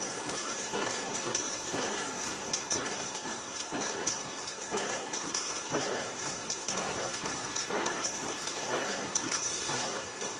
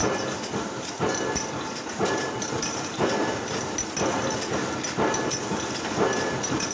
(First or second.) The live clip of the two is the second